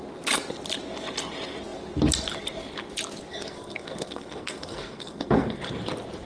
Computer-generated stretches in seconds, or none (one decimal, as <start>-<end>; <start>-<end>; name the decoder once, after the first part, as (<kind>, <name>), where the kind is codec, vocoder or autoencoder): 3.3-5.6 (codec, SNAC)